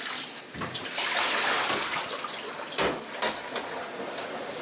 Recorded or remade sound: recorded